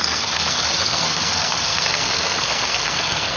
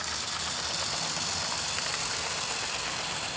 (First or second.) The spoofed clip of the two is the first